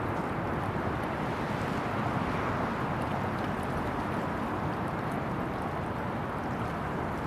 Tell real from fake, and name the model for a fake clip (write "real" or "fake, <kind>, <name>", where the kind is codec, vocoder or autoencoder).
real